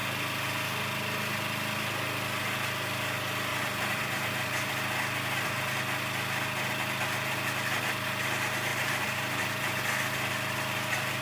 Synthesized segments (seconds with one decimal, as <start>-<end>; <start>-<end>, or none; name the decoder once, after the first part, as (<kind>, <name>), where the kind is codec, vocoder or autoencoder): 3.5-4.7 (vocoder, BigVGAN v2); 8.7-9.8

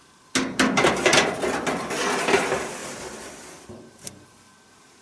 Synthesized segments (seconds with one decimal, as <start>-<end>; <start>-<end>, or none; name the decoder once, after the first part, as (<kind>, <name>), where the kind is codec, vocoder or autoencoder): 1.1-2.4 (vocoder, BigVGAN v2); 2.8-4.3

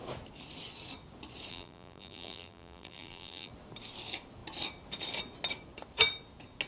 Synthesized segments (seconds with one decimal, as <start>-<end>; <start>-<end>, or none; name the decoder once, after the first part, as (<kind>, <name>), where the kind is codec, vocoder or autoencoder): 1.5-3.5 (vocoder, BigVGAN v2)

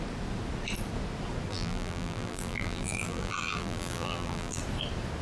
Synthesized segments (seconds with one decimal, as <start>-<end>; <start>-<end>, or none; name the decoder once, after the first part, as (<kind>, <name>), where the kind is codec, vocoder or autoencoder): 1.5-4.6 (vocoder, BigVGAN v2)

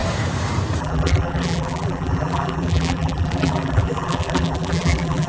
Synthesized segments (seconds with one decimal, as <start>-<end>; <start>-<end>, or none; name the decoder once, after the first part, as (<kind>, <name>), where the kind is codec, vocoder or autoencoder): 0.8-5.3 (vocoder, BigVGAN v2)

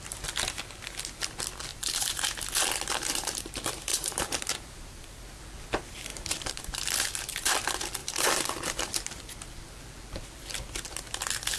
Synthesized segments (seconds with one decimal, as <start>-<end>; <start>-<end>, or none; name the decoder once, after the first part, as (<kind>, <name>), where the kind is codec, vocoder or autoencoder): 1.7-2.2 (vocoder, BigVGAN v2); 3.9-5.4; 6.1-6.8; 8.0-9.3

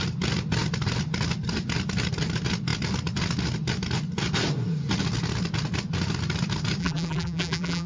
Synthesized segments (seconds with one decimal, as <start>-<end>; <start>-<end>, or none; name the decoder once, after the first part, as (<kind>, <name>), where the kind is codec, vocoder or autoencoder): 6.8-7.9 (vocoder, BigVGAN v2)

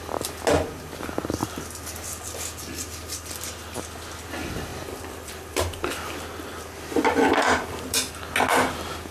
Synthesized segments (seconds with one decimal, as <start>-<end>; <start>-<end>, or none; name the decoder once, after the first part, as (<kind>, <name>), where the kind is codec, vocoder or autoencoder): 1.4-2.1 (vocoder, BigVGAN v2); 4.7-8.1